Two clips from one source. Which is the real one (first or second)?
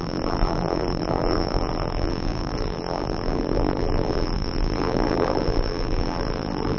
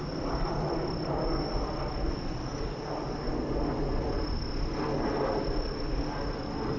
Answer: second